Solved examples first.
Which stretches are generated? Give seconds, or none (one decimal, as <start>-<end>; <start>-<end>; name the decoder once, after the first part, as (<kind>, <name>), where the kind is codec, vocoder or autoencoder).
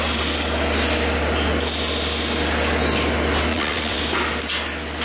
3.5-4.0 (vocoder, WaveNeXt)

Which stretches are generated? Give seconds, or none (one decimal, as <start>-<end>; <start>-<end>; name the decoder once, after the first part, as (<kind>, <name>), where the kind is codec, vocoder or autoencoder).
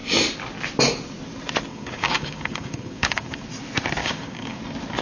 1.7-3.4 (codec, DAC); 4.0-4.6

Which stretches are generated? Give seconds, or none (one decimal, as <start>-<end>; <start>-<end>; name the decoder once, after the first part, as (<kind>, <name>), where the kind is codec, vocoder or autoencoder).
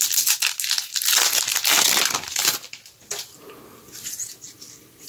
2.4-3.1 (vocoder, BigVGAN v2)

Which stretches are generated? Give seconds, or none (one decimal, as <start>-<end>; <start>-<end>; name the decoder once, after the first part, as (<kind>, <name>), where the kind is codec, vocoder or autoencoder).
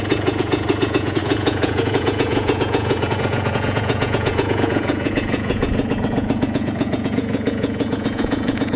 0.0-8.8 (vocoder, Vocos)